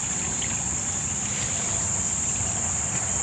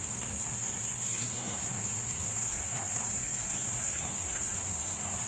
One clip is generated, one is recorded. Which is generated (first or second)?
second